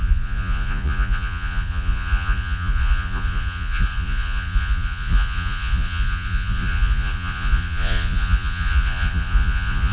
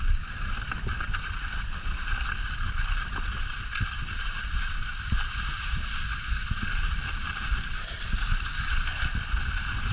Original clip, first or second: second